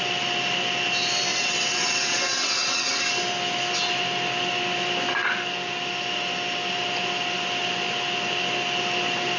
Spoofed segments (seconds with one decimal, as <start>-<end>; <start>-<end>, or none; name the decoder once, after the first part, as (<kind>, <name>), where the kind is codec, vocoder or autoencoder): 1.3-3.0 (vocoder, WaveNeXt)